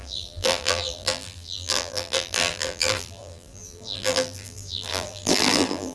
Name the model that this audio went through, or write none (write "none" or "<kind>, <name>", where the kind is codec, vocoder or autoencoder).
vocoder, BigVGAN v2